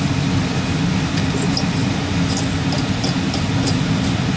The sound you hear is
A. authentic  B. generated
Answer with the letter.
A